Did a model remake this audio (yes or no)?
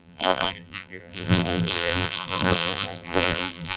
yes